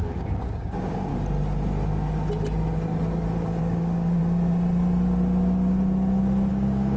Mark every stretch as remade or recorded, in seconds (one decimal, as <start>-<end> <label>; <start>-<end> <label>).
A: 0.0-1.1 remade; 1.1-3.6 recorded; 3.6-4.2 remade; 4.2-6.5 recorded; 6.5-7.0 remade